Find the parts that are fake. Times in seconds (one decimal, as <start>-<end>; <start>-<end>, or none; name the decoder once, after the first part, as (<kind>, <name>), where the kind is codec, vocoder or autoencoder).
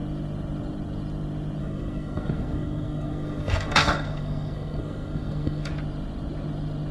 1.6-5.7 (codec, SNAC)